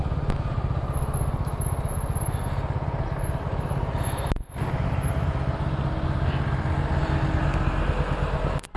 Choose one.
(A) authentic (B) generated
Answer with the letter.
A